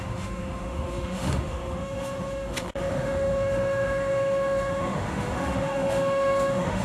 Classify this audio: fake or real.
fake